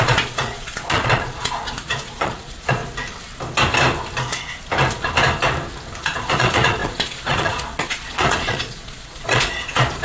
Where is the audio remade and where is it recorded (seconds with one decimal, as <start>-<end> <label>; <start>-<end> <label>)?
0.0-2.8 remade; 2.8-6.0 recorded; 6.0-10.0 remade